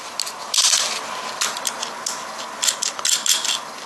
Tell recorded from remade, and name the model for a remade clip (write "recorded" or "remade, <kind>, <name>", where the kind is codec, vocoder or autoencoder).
recorded